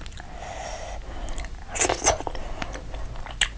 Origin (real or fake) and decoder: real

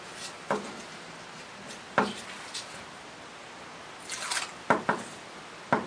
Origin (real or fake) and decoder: real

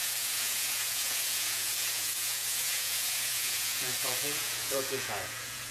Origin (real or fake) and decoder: fake, vocoder, Vocos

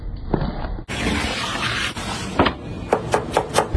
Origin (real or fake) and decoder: real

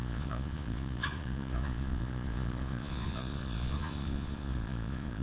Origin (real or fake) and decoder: fake, vocoder, Vocos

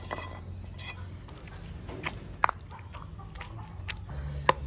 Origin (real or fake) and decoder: real